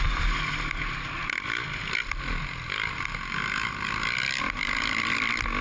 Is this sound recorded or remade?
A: recorded